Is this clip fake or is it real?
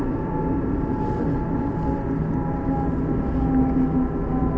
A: real